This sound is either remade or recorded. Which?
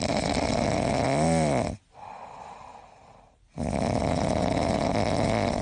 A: recorded